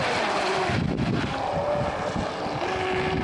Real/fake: real